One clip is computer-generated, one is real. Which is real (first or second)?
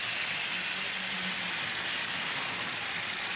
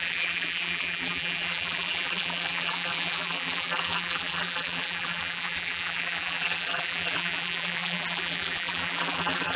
first